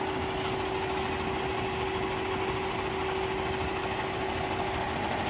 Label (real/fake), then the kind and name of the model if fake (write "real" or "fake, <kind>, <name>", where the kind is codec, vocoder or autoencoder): real